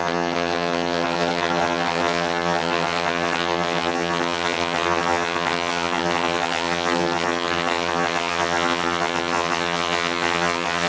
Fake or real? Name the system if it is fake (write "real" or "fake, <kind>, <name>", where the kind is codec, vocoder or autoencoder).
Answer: fake, vocoder, HiFi-GAN